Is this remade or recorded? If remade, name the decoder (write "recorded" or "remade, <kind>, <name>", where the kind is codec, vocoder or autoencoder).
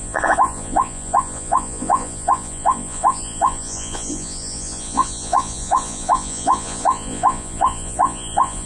remade, vocoder, Vocos